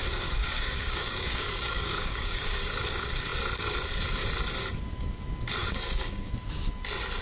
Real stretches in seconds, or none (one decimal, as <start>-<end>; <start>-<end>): 2.7-5.6; 6.3-7.2